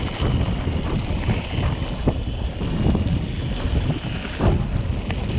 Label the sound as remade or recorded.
recorded